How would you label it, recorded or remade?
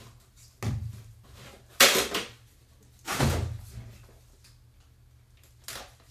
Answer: recorded